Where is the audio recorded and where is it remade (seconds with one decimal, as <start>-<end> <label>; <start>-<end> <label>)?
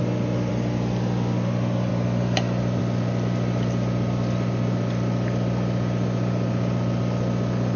0.0-0.5 remade; 0.5-1.9 recorded; 1.9-2.8 remade; 2.8-7.8 recorded